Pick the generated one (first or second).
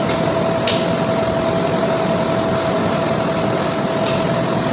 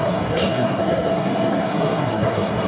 second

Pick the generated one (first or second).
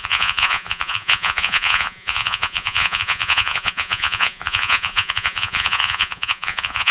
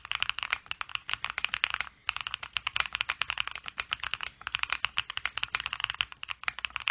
first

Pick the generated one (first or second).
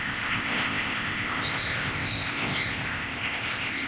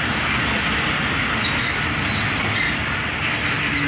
first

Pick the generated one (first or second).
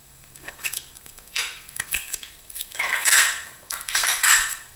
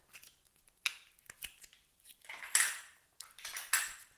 first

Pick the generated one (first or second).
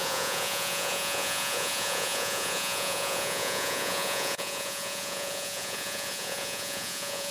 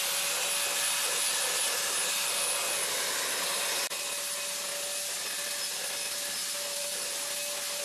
first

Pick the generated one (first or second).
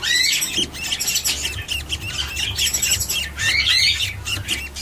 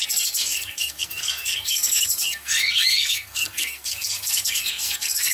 second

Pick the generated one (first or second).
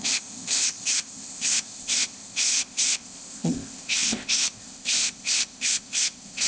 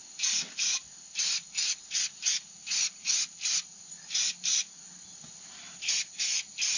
first